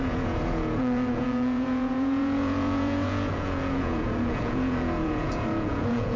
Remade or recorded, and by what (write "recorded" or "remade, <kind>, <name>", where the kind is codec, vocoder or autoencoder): remade, vocoder, Vocos